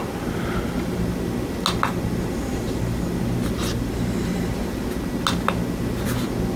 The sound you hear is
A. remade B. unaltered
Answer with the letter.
B